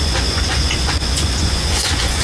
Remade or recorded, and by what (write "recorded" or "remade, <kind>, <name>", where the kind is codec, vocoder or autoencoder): remade, vocoder, Vocos